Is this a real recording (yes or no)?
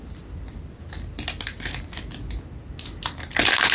yes